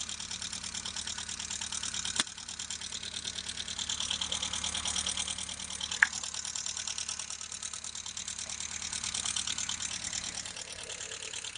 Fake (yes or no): no